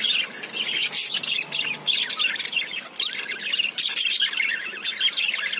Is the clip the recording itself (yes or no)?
yes